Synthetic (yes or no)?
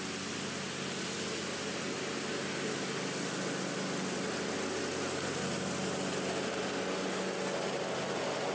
no